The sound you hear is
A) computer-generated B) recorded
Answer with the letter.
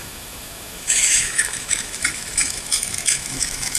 A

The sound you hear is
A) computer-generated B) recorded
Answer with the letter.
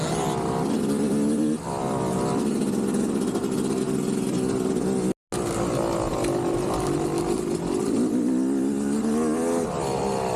B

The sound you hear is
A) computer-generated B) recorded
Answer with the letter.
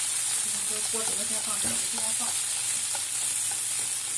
B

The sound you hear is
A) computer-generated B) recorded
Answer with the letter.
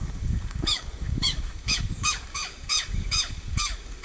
A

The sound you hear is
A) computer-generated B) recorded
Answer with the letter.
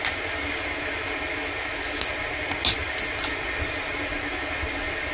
B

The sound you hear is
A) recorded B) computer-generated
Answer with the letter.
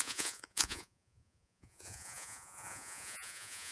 B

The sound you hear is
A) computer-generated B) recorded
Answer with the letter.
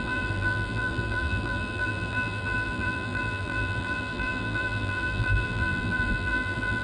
A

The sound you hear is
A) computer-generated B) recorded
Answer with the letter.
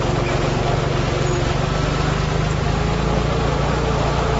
B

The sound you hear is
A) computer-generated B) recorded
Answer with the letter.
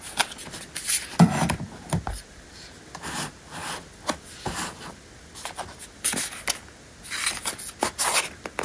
B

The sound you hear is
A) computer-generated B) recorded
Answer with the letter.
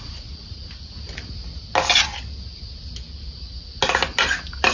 B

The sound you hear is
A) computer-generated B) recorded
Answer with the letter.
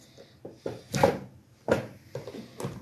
B